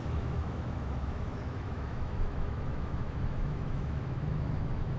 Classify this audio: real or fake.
fake